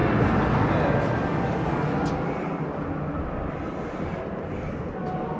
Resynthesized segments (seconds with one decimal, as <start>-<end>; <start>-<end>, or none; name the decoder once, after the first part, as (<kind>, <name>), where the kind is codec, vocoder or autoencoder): none